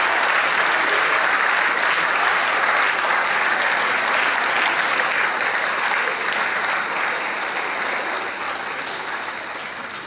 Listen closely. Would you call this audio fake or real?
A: real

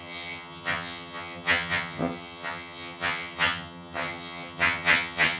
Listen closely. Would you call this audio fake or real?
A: fake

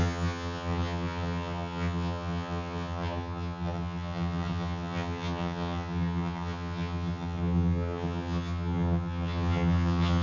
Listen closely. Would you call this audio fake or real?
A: fake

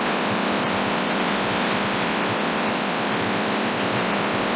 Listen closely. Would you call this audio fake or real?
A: real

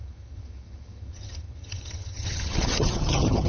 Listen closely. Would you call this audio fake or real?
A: fake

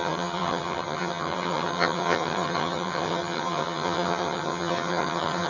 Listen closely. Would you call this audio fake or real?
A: fake